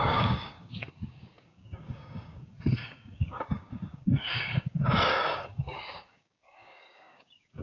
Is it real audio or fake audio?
fake